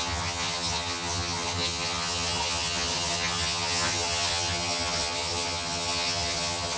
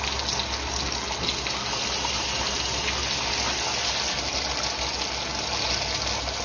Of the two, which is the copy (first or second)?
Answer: first